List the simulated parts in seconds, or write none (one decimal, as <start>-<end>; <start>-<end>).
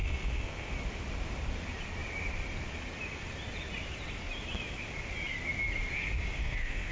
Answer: 0.0-0.7; 6.4-6.9